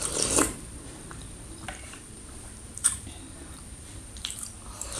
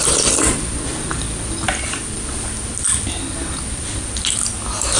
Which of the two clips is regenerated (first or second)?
first